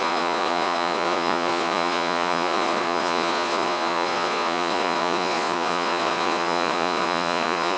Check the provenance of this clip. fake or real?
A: fake